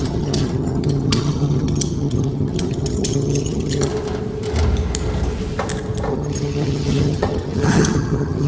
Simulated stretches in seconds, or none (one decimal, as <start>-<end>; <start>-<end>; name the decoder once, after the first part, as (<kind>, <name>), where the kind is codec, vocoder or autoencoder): 0.0-3.9 (vocoder, HiFi-GAN); 6.1-8.5